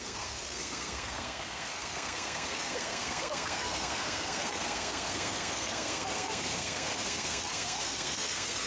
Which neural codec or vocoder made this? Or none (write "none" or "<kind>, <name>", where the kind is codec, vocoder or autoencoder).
codec, SNAC